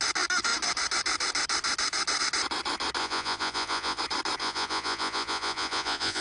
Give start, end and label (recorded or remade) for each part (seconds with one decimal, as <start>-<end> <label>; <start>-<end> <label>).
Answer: 0.0-3.0 recorded; 3.0-4.0 remade; 4.0-4.4 recorded; 4.4-6.2 remade